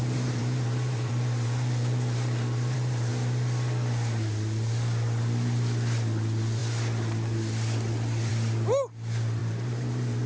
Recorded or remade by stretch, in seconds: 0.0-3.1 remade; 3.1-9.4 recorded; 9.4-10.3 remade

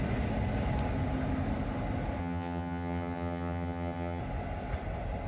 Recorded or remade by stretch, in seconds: 0.0-2.2 recorded; 2.2-4.2 remade; 4.2-5.3 recorded

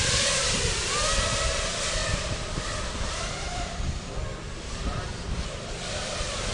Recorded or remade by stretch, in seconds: 0.0-6.5 remade

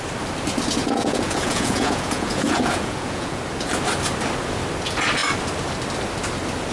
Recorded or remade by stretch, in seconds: 0.0-0.8 recorded; 0.8-3.4 remade; 3.4-6.7 recorded

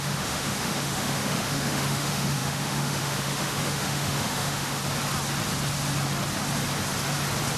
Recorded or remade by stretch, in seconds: 0.0-4.8 remade; 4.8-7.6 recorded

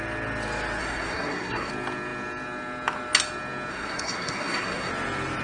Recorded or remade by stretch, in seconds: 0.0-0.8 recorded; 0.8-1.7 remade; 1.7-3.7 recorded; 3.7-4.9 remade; 4.9-5.4 recorded

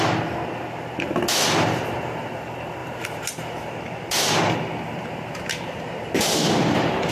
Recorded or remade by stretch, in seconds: 0.0-2.8 recorded; 2.8-7.1 remade